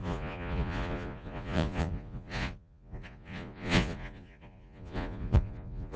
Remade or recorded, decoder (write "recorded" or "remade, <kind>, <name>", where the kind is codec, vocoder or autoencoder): remade, vocoder, Vocos